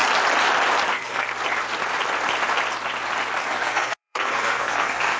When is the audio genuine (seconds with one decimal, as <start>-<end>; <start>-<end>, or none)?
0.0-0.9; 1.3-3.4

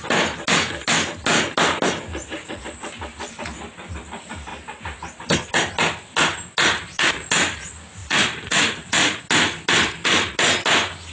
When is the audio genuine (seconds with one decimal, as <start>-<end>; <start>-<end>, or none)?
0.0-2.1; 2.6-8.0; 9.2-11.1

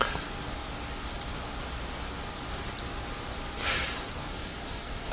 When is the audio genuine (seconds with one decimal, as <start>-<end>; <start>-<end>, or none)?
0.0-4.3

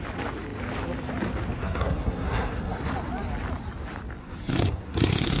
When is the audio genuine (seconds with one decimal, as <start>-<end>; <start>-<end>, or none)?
0.0-1.6; 2.9-4.2

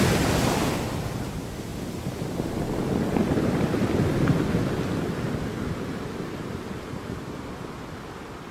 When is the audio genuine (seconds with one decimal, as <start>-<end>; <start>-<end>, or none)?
0.0-8.5

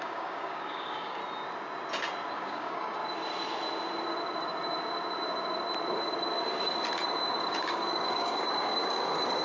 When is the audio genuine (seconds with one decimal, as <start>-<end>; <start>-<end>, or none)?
1.2-2.3; 3.0-7.4

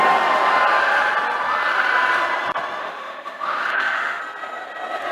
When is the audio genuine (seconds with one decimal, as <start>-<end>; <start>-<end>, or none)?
0.0-2.8; 4.2-5.1

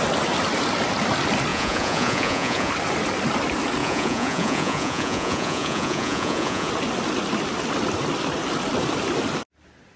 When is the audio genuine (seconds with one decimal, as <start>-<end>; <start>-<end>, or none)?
0.0-1.5; 2.7-3.8; 6.7-10.0